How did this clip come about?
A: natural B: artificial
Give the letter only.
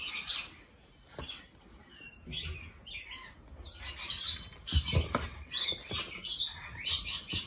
A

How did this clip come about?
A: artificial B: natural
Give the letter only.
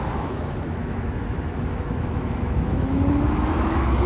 A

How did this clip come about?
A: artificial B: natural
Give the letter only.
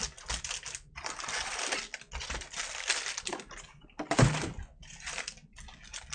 B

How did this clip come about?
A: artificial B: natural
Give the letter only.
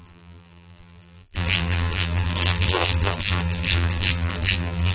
A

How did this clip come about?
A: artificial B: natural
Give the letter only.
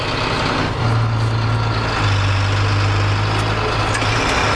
B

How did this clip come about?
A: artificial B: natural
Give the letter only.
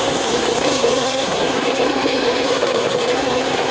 A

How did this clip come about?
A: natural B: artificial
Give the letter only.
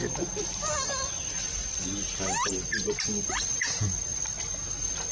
A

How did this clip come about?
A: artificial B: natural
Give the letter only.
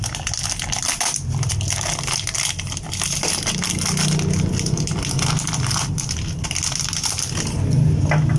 B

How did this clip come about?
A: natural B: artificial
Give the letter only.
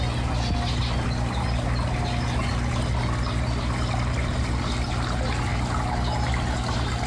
A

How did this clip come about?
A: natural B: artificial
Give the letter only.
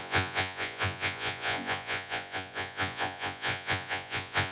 B